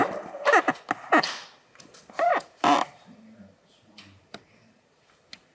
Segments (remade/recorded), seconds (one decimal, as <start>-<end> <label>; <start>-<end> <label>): 0.0-2.3 recorded; 2.3-5.0 remade; 5.0-5.5 recorded